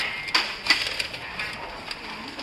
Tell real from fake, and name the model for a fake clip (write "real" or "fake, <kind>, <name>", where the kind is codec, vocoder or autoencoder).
real